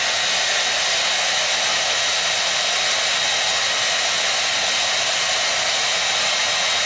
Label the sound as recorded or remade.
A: recorded